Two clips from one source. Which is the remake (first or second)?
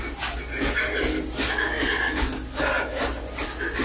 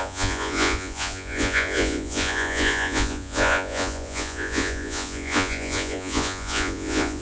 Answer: second